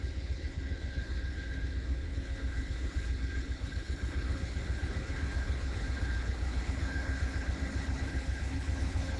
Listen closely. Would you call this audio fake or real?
fake